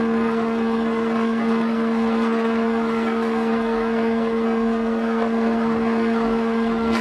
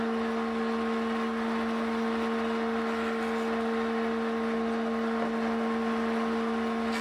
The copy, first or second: first